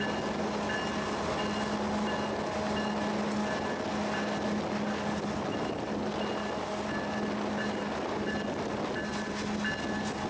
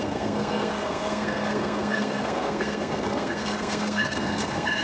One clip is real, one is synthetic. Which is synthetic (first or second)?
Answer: second